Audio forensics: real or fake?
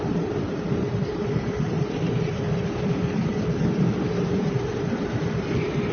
fake